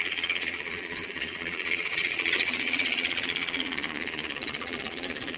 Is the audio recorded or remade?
remade